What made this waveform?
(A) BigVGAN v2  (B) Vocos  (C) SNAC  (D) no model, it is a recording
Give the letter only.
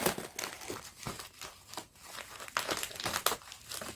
D